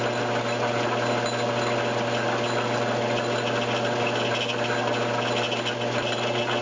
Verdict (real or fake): real